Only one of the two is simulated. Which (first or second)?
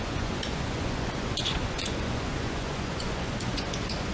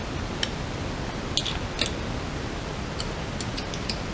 first